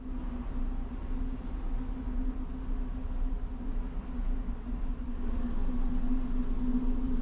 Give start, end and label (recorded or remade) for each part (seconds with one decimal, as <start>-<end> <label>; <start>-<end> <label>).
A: 0.0-7.2 recorded